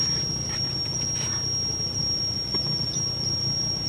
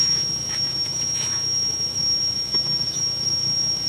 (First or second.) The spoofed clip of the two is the second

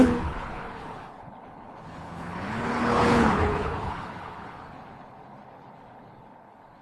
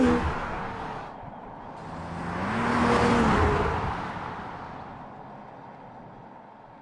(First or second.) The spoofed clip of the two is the first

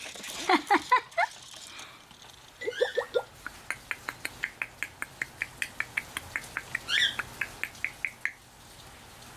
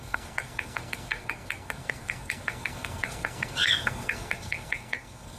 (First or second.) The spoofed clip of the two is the second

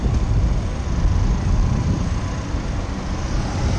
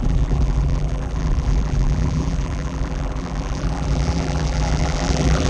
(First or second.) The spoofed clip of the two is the second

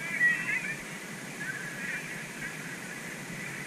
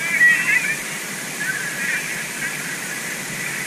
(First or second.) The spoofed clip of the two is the first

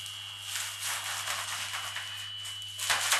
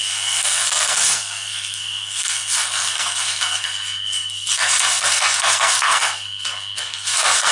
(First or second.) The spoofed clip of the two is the second